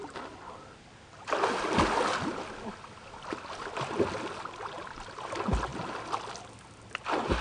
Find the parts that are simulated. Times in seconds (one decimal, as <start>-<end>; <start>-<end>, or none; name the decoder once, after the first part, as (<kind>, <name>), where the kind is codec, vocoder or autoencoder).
none